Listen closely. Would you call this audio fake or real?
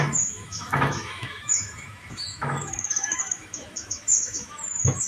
fake